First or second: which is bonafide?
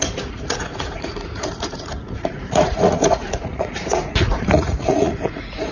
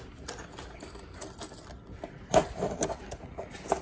second